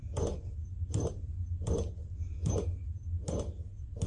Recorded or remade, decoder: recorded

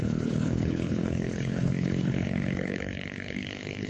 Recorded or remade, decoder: remade, codec, HILCodec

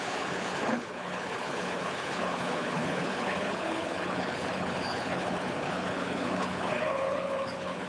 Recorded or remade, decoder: remade, codec, HILCodec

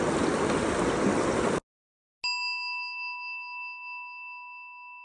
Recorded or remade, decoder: recorded